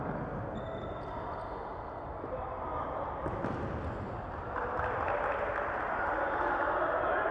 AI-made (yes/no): no